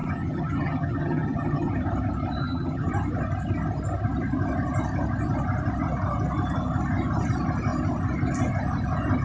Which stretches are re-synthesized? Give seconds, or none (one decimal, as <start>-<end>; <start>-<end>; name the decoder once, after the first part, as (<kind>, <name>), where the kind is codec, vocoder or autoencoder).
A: 0.0-1.7 (vocoder, HiFi-GAN); 2.4-2.9